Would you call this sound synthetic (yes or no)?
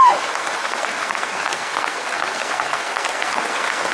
yes